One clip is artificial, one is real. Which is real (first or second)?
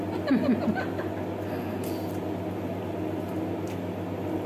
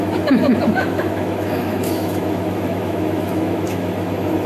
first